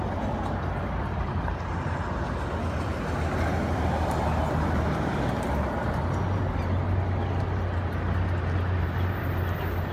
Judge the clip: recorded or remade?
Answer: recorded